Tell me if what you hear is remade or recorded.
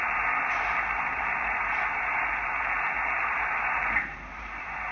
remade